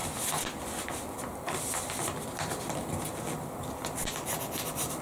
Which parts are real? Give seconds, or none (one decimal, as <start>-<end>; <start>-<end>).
0.0-5.0